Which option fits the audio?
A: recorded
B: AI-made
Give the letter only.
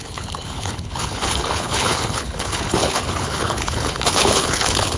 B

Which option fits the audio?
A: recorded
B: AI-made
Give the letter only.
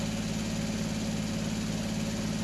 A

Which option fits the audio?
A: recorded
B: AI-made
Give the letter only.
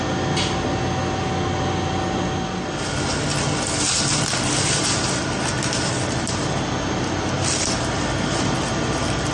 A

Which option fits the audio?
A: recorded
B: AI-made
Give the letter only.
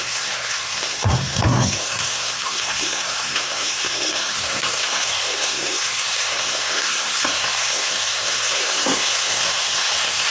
B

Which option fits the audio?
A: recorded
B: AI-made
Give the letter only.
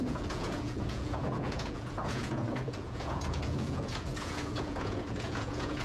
B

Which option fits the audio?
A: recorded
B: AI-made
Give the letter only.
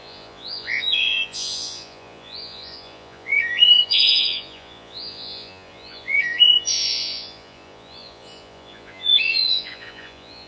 B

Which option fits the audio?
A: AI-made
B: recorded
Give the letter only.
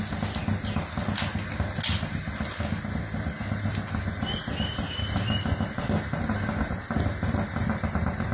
B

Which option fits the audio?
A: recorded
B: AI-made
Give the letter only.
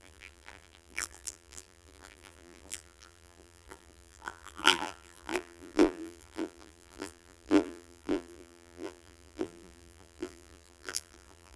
B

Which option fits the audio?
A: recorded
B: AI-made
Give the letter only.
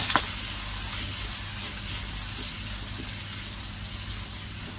A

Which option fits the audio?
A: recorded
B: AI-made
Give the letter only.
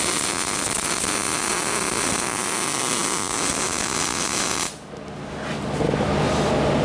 A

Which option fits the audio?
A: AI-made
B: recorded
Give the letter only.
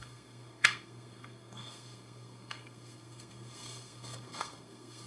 A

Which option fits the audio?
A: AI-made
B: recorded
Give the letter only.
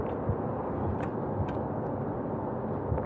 B